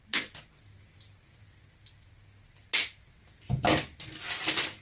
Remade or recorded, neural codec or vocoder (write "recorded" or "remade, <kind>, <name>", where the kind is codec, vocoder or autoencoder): recorded